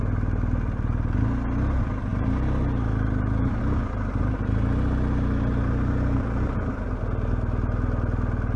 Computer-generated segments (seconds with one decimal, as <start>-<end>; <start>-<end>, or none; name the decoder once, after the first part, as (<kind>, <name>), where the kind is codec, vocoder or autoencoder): 2.1-3.6 (vocoder, BigVGAN v2); 4.2-6.8